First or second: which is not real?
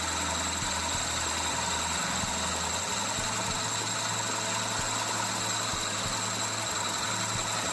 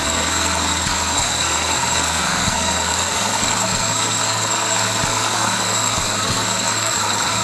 second